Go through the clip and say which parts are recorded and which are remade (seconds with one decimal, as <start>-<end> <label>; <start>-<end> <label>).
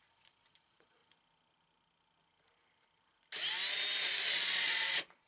0.0-1.0 remade; 1.0-4.0 recorded; 4.0-5.3 remade